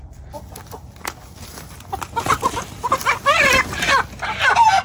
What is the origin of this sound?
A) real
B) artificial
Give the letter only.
A